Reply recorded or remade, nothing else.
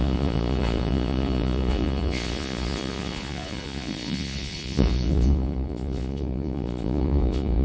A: remade